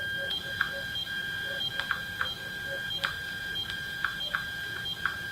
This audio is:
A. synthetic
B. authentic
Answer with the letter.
B